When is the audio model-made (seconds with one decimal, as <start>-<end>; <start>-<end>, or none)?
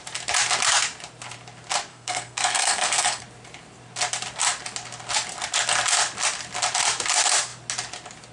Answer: 1.9-3.2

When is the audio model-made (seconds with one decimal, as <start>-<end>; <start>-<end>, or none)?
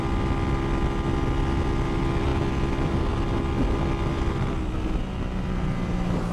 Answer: none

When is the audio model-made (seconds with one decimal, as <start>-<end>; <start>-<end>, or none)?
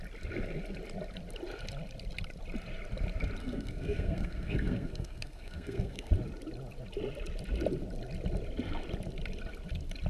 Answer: 3.4-6.1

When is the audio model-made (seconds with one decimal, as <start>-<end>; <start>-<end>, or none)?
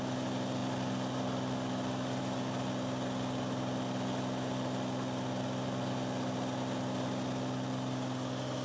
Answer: none